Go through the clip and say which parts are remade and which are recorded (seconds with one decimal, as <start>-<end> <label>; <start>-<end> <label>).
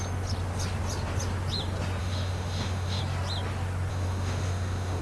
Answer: 0.0-2.0 recorded; 2.0-3.0 remade; 3.0-3.9 recorded; 3.9-5.0 remade